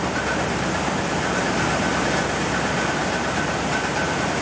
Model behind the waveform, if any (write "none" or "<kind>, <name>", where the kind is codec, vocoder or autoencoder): none